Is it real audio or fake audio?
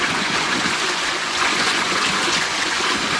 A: fake